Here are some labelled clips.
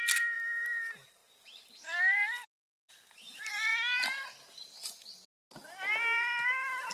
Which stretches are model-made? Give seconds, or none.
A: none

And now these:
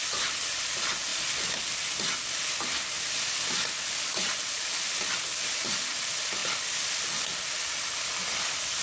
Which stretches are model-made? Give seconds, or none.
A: none

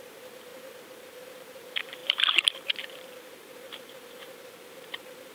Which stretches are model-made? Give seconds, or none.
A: 0.0-5.3 (vocoder, BigVGAN v2)

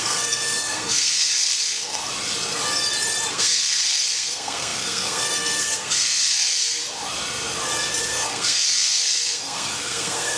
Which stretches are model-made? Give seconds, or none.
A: 0.0-2.0 (codec, SNAC); 3.3-6.8; 8.0-10.4

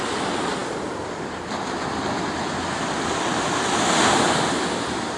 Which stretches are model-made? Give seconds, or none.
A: none

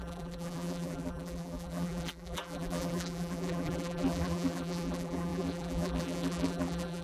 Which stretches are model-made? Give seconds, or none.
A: 0.0-7.0 (vocoder, BigVGAN v2)

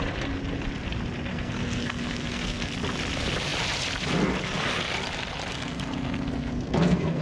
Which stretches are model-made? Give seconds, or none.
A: 1.3-2.7 (codec, SNAC); 5.5-7.2

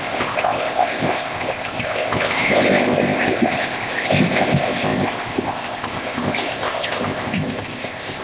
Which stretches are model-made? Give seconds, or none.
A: 0.0-8.2 (codec, ZipCodec)